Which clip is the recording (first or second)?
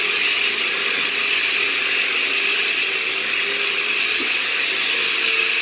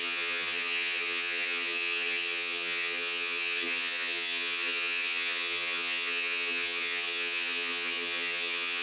first